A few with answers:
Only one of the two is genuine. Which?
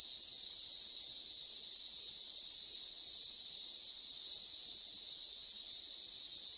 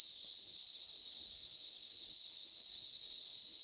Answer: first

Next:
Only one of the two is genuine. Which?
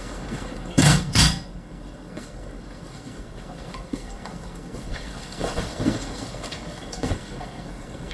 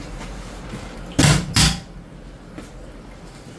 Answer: second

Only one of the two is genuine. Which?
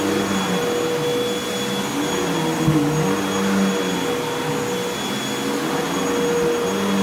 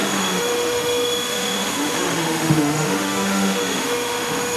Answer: first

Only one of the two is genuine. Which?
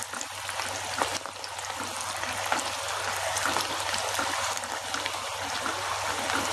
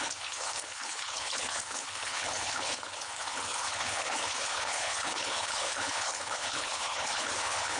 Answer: first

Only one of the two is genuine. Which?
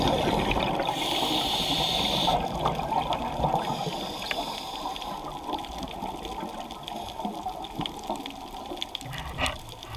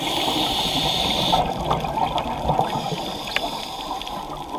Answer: first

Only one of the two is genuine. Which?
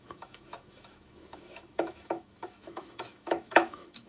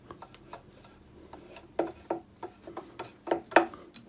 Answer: second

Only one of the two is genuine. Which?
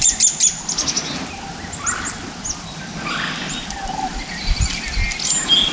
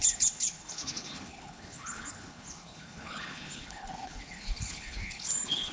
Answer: first